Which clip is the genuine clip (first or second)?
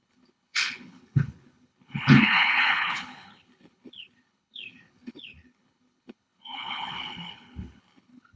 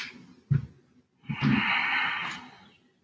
second